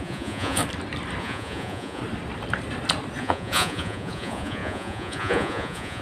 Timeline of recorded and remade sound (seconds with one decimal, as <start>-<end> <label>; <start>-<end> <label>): 0.0-0.6 remade; 0.6-1.2 recorded; 1.2-2.0 remade; 2.0-3.2 recorded; 3.2-6.0 remade